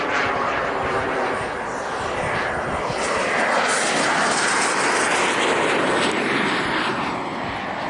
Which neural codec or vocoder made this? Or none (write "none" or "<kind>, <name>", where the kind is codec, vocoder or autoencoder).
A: none